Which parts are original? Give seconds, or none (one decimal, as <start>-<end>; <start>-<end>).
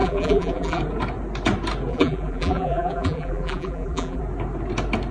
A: 0.8-1.9; 4.2-5.1